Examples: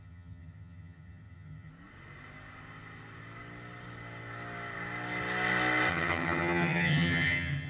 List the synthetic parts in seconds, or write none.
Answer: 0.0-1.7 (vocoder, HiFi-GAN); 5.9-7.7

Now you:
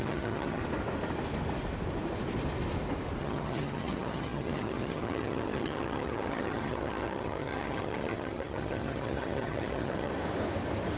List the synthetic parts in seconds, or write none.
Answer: 0.0-0.6 (vocoder, HiFi-GAN); 3.2-10.1

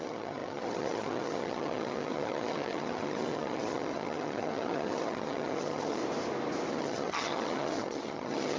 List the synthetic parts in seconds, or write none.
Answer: 0.0-6.0 (vocoder, HiFi-GAN); 6.7-8.6

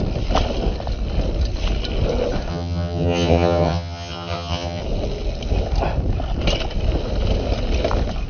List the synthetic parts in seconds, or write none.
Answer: 2.5-4.8 (vocoder, HiFi-GAN)

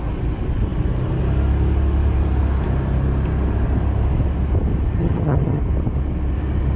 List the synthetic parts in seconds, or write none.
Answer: 5.0-5.6 (vocoder, HiFi-GAN)

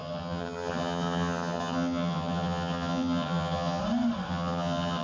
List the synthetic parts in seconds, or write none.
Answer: 0.0-3.8 (vocoder, HiFi-GAN); 4.3-5.0

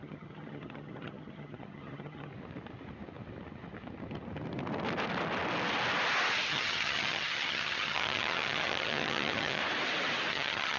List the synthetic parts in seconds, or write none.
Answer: 0.0-2.3 (vocoder, HiFi-GAN); 6.5-9.6; 10.3-10.8

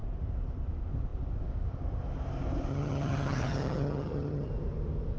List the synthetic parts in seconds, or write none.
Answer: 2.7-4.5 (vocoder, HiFi-GAN)